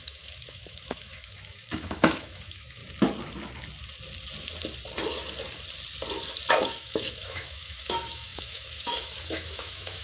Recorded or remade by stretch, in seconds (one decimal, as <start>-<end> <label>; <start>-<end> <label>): 0.0-2.8 remade; 2.8-6.5 recorded; 6.5-10.0 remade